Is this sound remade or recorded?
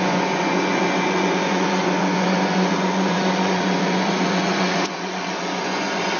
remade